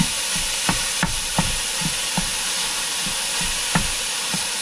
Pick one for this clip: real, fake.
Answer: real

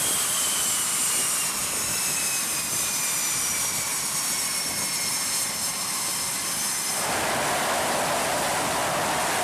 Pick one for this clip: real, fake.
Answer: real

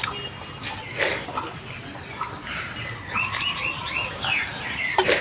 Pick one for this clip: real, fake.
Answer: real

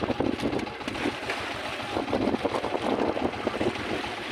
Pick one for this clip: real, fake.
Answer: real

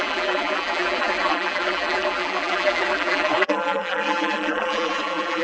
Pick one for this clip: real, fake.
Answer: fake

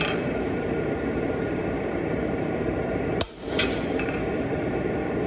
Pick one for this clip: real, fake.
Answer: fake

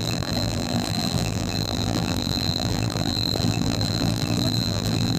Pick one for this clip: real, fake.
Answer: fake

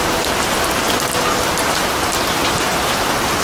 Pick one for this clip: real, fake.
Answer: real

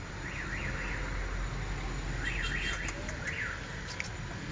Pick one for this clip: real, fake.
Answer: real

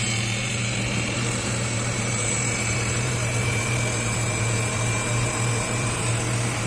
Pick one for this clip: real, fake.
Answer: fake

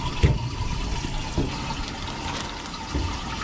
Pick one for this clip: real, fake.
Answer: real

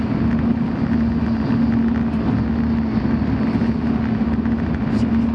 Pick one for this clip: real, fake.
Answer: real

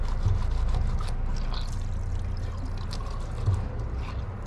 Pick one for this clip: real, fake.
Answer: real